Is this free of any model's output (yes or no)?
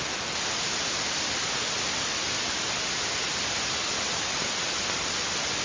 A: yes